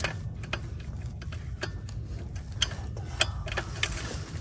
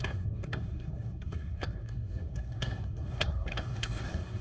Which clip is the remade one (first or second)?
second